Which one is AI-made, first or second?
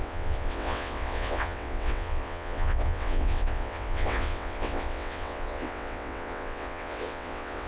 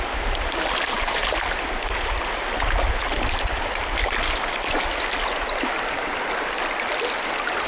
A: first